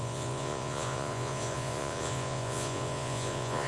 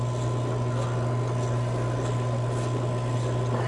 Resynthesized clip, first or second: first